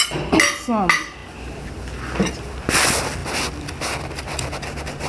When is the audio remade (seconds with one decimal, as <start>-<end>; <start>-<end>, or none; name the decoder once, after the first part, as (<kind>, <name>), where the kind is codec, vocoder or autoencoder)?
none